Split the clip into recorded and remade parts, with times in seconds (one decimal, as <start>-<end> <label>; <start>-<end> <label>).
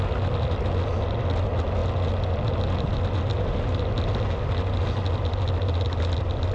0.0-6.5 recorded